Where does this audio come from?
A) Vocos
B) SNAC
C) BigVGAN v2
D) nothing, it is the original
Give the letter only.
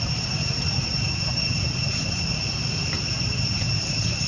C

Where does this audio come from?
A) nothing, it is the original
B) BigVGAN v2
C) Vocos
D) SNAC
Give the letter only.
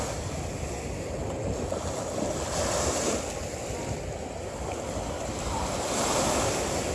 A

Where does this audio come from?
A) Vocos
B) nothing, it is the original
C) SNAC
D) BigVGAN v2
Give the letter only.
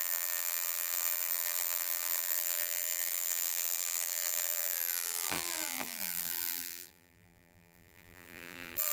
D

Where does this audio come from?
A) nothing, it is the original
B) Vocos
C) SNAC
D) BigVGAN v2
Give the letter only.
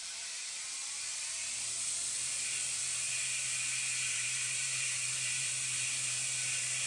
D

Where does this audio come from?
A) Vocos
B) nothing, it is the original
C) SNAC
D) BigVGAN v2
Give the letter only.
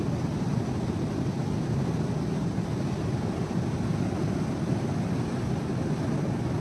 B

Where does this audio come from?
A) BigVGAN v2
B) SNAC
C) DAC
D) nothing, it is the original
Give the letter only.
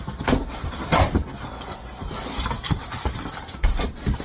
A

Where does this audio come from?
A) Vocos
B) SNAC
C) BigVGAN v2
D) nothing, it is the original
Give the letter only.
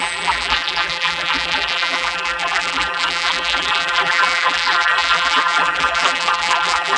C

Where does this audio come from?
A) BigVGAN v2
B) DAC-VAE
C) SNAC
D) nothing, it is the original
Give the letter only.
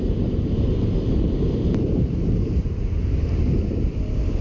A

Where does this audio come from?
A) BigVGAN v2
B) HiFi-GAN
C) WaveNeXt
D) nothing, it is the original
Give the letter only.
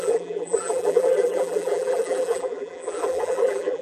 A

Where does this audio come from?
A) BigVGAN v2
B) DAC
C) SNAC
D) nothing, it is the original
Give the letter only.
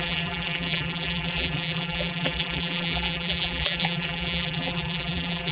A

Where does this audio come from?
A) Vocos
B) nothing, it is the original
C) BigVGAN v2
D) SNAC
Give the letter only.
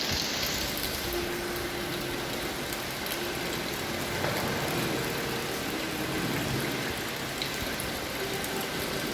B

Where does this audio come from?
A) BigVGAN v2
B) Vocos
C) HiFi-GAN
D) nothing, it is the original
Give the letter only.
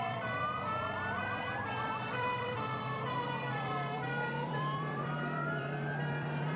A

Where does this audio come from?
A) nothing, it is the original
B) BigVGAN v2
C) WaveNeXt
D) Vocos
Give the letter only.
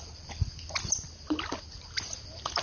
A